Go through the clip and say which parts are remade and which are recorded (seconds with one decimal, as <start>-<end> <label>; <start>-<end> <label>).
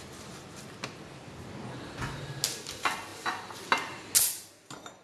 0.0-5.0 recorded